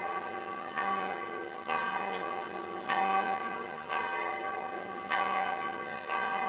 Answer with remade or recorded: remade